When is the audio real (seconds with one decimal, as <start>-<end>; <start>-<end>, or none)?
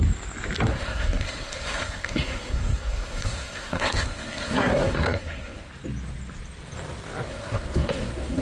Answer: 0.0-0.7; 5.7-7.3